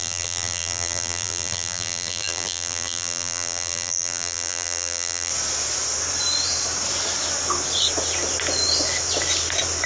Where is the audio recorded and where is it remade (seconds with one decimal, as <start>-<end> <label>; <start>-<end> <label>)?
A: 0.0-5.3 remade; 5.3-9.9 recorded